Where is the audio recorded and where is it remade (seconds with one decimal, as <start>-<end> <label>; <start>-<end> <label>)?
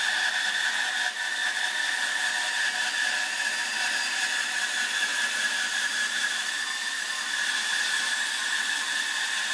0.0-5.1 recorded; 5.1-6.3 remade; 6.3-9.5 recorded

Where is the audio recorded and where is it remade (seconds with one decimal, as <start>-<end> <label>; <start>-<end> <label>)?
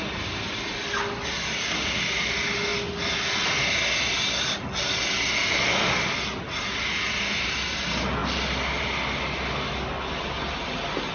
0.0-11.1 recorded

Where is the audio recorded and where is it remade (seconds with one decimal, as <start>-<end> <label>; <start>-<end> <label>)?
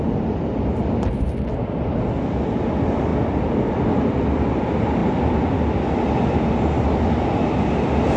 0.0-8.2 recorded